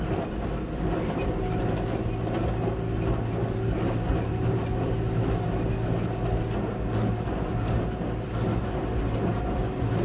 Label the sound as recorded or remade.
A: recorded